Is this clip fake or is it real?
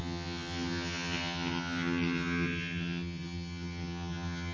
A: fake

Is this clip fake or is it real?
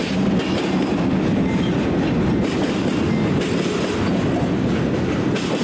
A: real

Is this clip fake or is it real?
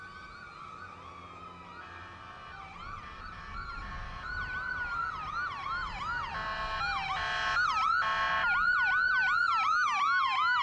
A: real